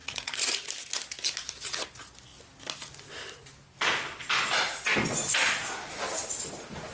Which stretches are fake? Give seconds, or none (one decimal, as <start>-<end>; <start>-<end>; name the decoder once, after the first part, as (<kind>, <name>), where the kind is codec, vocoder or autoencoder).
0.0-0.7 (vocoder, Vocos)